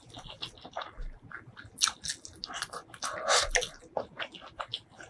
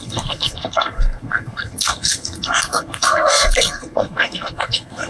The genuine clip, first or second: first